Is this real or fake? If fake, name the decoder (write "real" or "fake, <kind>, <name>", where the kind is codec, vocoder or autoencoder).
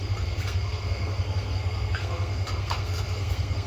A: fake, codec, SNAC